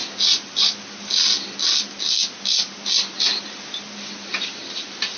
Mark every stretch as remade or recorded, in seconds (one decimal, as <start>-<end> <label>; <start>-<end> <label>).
0.0-5.2 recorded